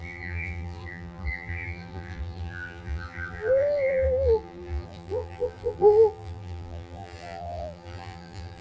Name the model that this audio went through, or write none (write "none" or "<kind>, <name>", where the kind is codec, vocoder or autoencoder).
vocoder, BigVGAN v2